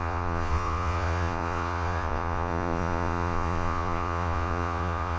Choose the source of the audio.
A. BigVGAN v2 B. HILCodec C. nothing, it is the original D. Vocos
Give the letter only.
D